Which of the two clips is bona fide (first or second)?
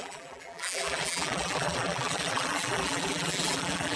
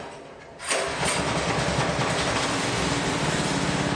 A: second